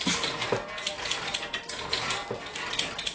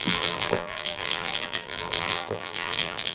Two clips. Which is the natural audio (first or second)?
first